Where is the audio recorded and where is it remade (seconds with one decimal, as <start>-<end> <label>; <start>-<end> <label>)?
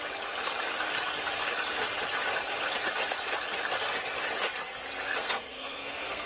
0.0-5.2 recorded; 5.2-6.3 remade